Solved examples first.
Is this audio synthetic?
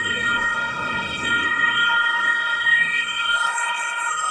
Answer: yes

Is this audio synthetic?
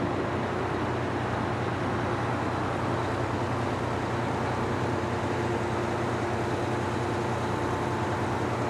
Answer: no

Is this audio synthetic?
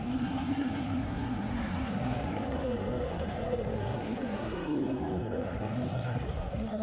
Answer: yes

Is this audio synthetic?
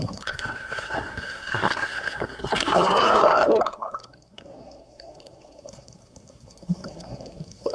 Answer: yes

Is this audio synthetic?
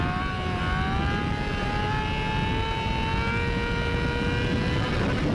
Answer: no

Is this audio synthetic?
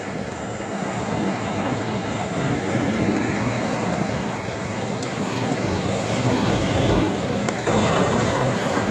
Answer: yes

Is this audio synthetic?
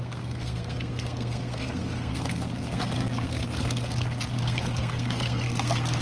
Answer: yes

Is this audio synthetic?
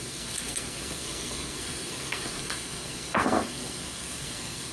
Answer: yes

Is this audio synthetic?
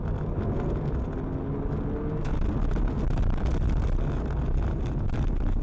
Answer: no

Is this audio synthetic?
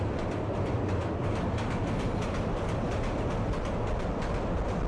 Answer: no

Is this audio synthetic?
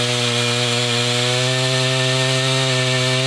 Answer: no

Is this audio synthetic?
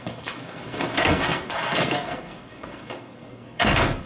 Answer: yes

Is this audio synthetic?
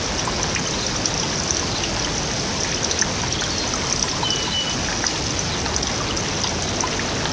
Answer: no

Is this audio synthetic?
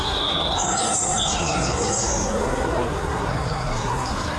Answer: yes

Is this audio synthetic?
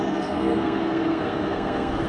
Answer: yes